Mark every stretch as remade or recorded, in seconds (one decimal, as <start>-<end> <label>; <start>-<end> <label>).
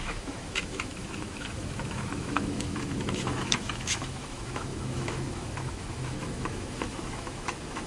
0.0-7.9 remade